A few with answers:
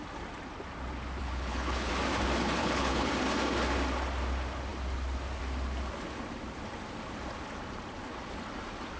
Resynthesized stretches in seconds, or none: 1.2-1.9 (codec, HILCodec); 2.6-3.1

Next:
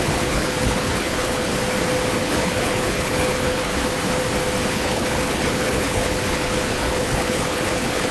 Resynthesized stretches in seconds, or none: 0.0-1.5 (codec, HILCodec); 2.2-3.7; 4.7-8.1

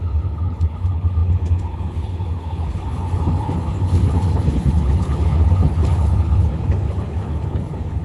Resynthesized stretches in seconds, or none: 0.0-8.0 (codec, HILCodec)

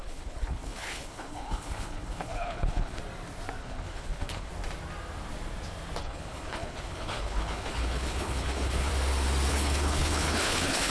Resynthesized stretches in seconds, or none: 0.0-3.0 (codec, HILCodec); 3.6-4.5; 6.0-8.9; 9.5-10.9

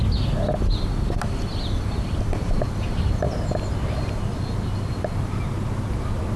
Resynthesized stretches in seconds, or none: none